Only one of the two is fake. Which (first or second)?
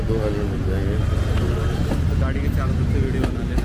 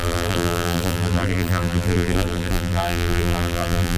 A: second